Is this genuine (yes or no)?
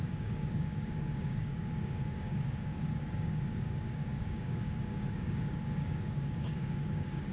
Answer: no